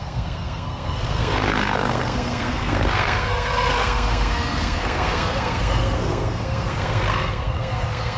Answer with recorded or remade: remade